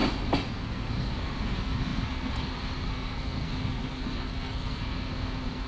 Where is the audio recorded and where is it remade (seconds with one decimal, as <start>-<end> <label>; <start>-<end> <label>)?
0.0-0.5 recorded; 0.5-5.7 remade

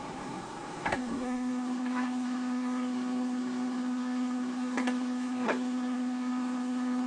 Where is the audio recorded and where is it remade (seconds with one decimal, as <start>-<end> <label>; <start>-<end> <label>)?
0.0-7.1 remade

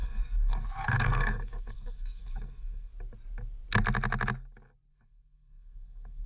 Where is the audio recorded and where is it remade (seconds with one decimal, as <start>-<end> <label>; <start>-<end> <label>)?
0.0-2.9 remade; 2.9-4.9 recorded; 4.9-6.3 remade

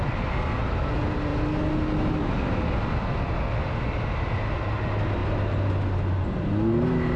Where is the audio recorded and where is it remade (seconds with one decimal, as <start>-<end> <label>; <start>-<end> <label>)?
0.0-7.2 recorded

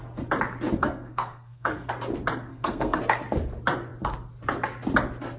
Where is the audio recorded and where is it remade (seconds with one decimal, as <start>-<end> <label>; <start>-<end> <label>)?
0.0-0.8 recorded; 0.8-1.9 remade; 1.9-2.5 recorded; 2.5-3.0 remade; 3.0-5.4 recorded

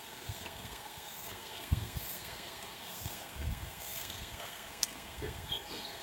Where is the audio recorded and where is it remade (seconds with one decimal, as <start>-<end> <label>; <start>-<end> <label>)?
0.0-6.0 remade

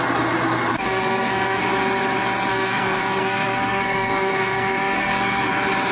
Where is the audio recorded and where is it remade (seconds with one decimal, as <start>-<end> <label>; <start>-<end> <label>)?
0.0-0.7 recorded; 0.7-1.7 remade; 1.7-2.5 recorded; 2.5-5.5 remade; 5.5-5.9 recorded